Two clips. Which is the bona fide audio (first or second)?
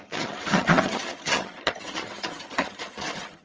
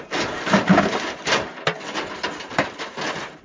second